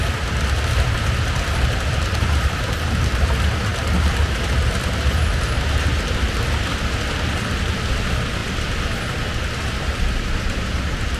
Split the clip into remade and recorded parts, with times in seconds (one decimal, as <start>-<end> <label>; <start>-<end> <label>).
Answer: 0.0-2.1 recorded; 2.1-2.8 remade; 2.8-3.7 recorded; 3.7-4.3 remade; 4.3-11.2 recorded